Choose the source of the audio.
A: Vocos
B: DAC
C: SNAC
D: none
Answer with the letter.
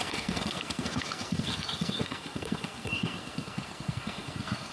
C